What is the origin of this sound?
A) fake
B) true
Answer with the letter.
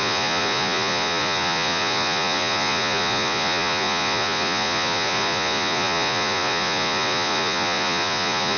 A